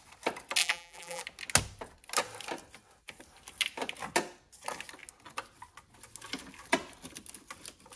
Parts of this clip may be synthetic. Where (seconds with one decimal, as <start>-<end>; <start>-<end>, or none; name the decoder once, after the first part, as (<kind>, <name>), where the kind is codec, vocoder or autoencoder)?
0.6-1.2 (vocoder, BigVGAN v2)